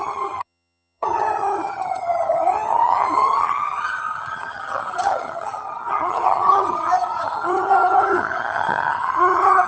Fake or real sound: fake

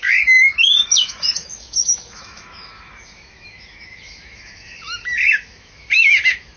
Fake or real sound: fake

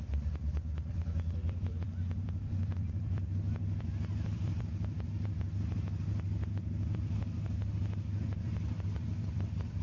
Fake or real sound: fake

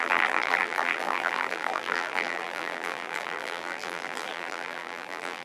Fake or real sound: fake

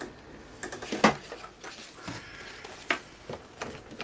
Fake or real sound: real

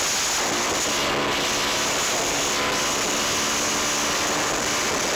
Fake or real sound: real